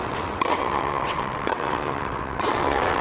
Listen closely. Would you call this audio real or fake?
fake